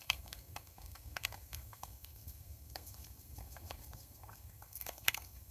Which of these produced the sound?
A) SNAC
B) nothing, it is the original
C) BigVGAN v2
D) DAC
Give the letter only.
A